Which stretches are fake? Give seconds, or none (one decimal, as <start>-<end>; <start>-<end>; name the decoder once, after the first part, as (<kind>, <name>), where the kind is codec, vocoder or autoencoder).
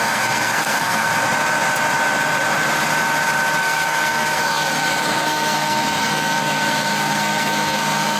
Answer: 0.0-1.1 (codec, SNAC); 3.6-8.2